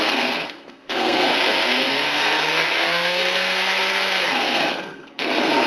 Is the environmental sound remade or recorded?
remade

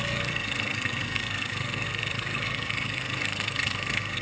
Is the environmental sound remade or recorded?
remade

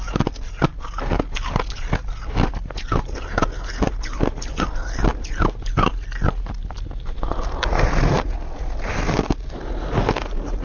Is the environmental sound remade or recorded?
recorded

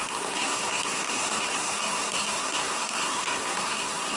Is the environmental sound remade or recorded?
remade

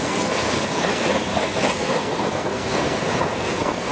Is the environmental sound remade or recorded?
remade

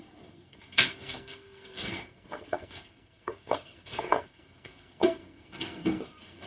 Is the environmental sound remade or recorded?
remade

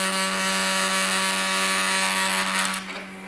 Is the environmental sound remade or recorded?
recorded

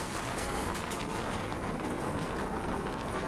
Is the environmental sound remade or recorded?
remade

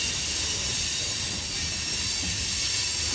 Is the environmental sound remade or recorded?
recorded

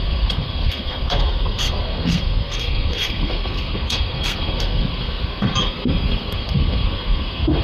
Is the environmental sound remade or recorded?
remade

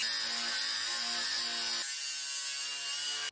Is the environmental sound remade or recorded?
recorded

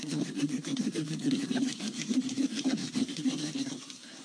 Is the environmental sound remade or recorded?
remade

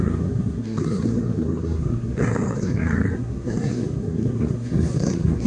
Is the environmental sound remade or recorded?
remade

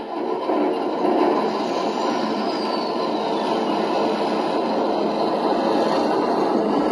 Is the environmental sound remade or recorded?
recorded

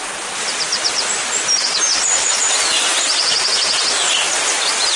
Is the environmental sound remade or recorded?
recorded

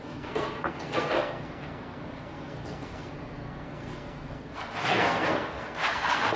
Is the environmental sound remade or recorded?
remade